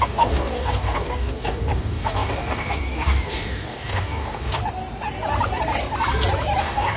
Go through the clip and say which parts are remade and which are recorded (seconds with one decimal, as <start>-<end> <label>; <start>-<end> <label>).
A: 0.0-4.6 remade; 4.6-6.6 recorded; 6.6-7.0 remade